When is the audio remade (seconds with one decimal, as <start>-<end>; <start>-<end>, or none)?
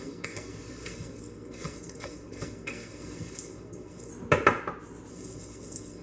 0.0-4.1; 5.1-6.0